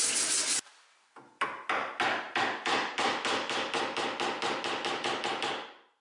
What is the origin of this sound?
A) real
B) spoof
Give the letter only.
A